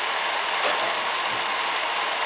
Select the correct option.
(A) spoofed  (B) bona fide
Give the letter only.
B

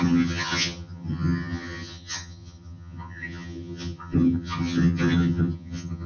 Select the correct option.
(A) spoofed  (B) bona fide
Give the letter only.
A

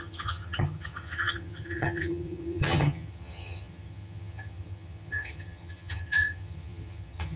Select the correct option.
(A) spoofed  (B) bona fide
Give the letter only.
A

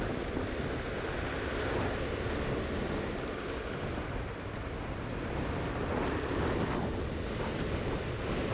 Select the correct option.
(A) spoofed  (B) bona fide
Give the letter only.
B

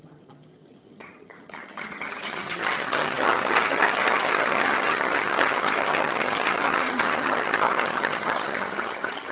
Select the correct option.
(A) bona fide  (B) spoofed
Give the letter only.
B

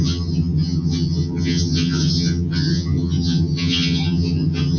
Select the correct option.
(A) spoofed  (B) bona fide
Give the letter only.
A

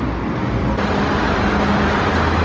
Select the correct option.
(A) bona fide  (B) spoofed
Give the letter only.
A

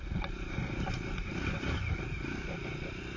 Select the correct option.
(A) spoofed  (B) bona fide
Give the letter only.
B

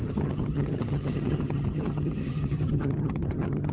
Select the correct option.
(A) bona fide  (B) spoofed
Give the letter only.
B